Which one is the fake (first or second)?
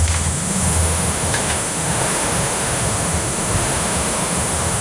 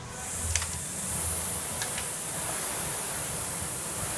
first